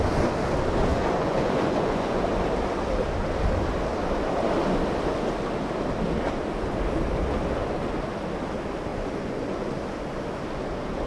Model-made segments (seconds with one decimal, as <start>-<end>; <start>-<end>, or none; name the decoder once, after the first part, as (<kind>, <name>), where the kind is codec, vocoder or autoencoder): 0.9-2.2 (vocoder, Vocos); 8.9-9.7